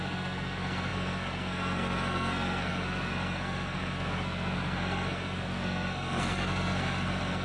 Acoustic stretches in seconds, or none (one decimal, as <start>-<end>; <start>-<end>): none